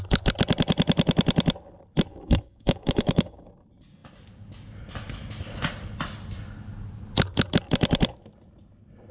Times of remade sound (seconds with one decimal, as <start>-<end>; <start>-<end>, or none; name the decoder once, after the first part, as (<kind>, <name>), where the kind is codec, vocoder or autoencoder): 2.1-3.5 (codec, DAC)